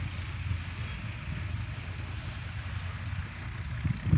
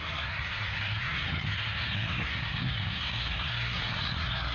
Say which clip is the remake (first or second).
second